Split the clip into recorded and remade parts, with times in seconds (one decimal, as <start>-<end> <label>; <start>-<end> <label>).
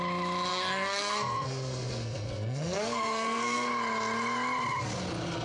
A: 0.0-0.5 recorded; 0.5-3.7 remade; 3.7-5.4 recorded